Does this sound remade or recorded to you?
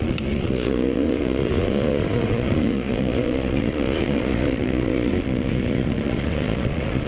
remade